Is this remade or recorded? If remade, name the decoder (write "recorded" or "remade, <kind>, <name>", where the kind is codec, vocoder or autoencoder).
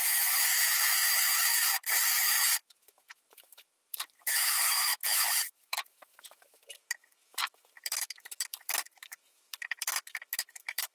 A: remade, autoencoder, DAC-VAE